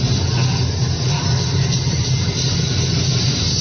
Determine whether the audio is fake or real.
real